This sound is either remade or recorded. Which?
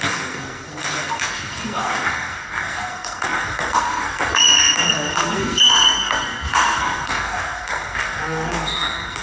remade